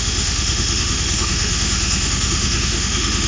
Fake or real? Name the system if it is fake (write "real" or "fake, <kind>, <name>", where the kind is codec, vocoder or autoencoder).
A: fake, autoencoder, DAC-VAE